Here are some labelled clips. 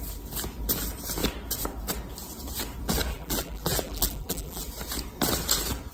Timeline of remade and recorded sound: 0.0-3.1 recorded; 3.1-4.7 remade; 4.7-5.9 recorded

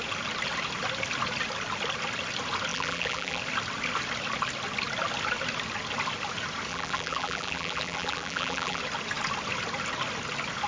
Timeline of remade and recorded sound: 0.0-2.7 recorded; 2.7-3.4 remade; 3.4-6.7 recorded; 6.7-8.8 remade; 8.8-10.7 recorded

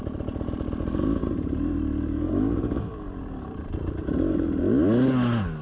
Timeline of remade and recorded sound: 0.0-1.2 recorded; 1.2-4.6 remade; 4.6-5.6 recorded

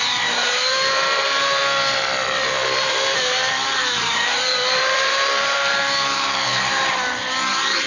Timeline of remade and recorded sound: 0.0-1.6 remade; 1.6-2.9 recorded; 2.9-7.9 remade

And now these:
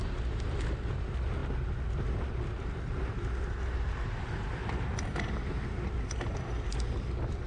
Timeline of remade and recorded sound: 0.0-7.5 recorded